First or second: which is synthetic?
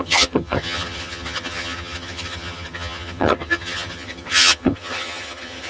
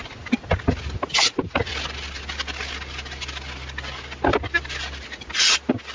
first